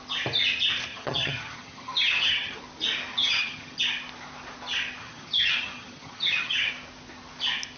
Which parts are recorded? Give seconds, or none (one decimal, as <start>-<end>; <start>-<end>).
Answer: 0.0-0.9; 2.6-3.1; 3.8-5.0; 6.7-7.8